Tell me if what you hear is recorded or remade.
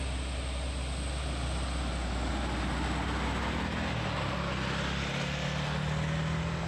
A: recorded